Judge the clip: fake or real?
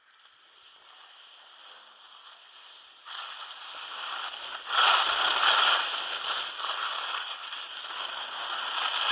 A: real